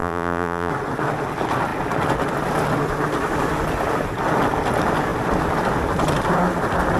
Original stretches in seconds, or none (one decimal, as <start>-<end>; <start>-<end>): 0.7-7.0